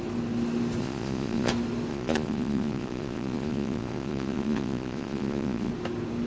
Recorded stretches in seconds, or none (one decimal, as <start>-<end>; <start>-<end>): 0.0-0.8; 1.5-1.9; 5.7-6.3